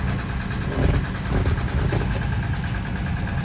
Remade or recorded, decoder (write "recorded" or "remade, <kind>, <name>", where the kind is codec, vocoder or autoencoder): recorded